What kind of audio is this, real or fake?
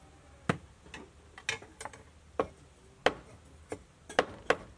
real